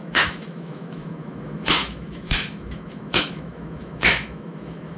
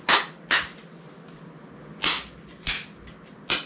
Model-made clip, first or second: first